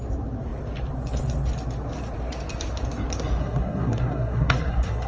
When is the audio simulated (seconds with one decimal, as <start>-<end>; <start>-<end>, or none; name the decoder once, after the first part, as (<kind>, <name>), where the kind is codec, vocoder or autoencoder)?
3.4-5.1 (codec, SNAC)